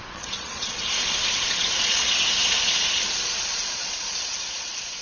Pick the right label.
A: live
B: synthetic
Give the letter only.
B